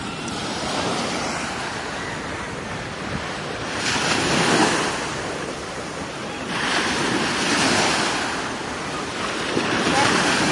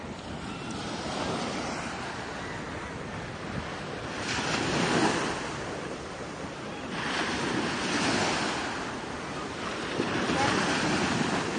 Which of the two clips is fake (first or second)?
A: first